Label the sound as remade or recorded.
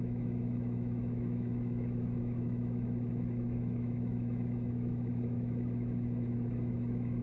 remade